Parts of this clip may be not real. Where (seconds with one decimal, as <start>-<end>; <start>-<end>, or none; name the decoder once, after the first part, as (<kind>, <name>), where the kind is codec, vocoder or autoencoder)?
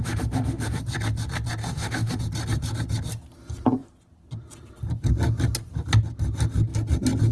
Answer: 0.0-0.8 (autoencoder, DAC-VAE); 1.6-2.2